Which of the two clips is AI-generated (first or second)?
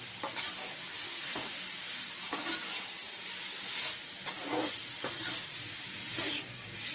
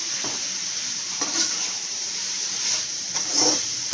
second